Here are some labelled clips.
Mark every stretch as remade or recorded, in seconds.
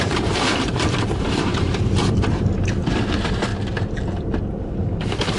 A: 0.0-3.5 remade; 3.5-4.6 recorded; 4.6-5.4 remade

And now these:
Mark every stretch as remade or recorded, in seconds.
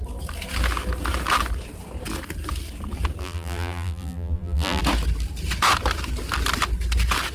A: 0.0-3.2 recorded; 3.2-4.8 remade; 4.8-7.3 recorded